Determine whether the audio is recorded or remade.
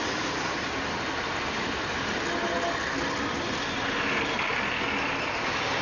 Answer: recorded